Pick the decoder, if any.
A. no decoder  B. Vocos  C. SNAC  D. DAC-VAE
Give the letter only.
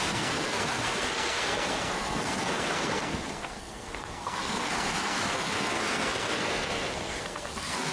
C